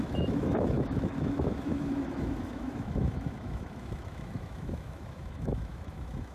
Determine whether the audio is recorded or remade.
remade